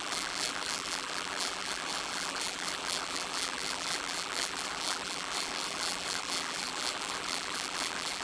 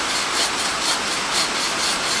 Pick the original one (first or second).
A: second